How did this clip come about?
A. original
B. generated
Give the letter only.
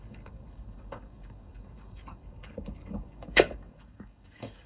B